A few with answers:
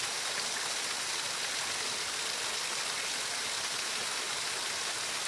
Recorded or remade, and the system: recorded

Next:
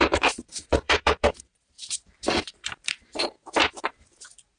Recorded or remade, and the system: remade, vocoder, BigVGAN v2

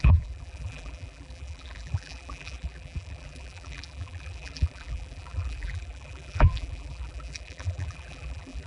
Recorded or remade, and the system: remade, vocoder, BigVGAN v2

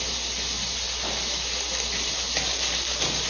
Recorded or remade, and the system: recorded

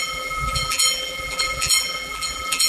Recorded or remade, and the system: remade, vocoder, BigVGAN v2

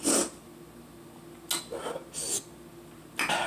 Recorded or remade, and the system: recorded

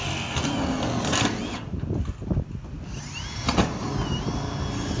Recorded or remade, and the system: recorded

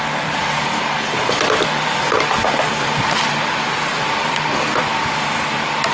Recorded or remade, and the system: remade, vocoder, BigVGAN v2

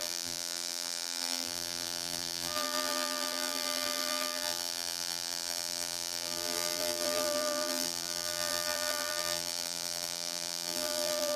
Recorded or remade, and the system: remade, vocoder, BigVGAN v2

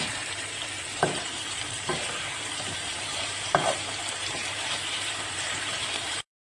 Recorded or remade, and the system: remade, vocoder, BigVGAN v2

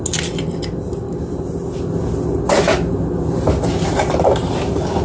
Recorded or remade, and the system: recorded